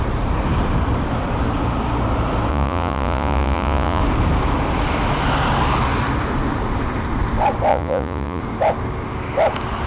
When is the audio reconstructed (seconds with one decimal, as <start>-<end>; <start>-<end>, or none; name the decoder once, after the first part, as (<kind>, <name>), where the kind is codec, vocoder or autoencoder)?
2.5-4.0 (vocoder, Vocos); 7.7-8.4

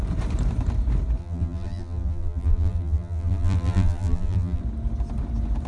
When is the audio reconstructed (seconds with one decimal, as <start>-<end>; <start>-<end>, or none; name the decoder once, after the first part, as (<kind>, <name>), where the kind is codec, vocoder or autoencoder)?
1.2-4.6 (vocoder, BigVGAN v2)

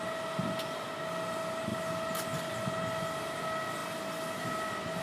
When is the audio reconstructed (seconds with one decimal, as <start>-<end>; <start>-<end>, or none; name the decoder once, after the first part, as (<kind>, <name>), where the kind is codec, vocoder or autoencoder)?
none